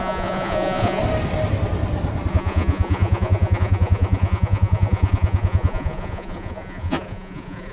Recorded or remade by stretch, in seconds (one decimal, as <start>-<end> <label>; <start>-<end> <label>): 0.0-1.0 remade; 1.0-2.3 recorded; 2.3-7.7 remade